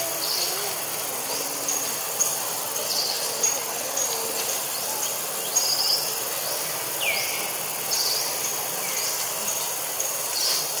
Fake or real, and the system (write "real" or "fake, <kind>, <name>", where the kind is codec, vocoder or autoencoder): real